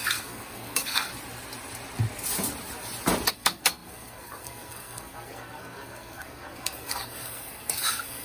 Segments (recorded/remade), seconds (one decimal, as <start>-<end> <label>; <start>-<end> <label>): 0.0-1.1 remade; 1.1-3.3 recorded; 3.3-8.2 remade